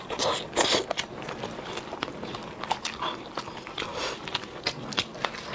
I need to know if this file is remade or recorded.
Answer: recorded